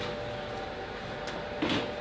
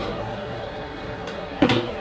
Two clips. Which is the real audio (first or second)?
first